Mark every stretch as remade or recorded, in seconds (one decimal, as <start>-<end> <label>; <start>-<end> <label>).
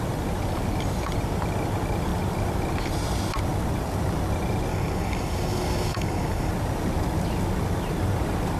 0.0-4.7 recorded; 4.7-6.5 remade; 6.5-8.6 recorded